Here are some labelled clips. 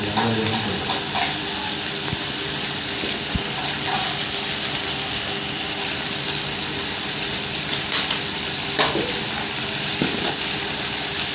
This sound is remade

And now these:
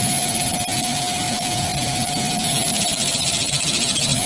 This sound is recorded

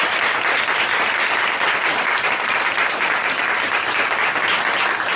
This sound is recorded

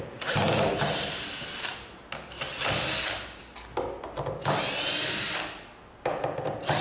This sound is recorded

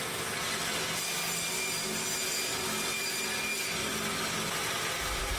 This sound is recorded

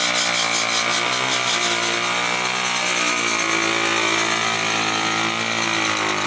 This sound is recorded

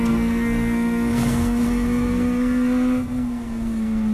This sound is remade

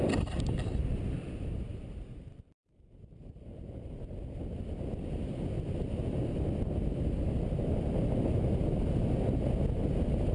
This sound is recorded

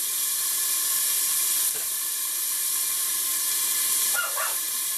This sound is recorded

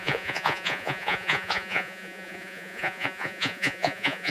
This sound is remade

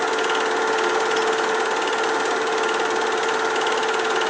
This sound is recorded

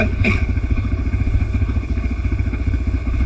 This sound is remade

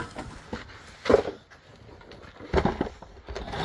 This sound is recorded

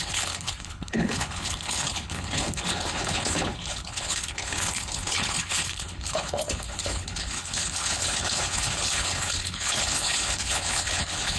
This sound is remade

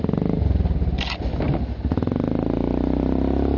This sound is recorded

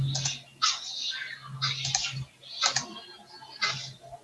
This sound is recorded